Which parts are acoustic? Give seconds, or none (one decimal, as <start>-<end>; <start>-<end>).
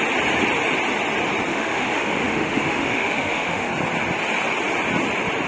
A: 0.0-1.5; 3.7-5.5